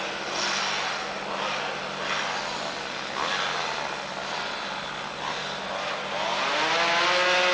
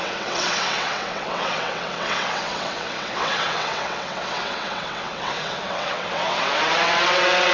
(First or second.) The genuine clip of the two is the first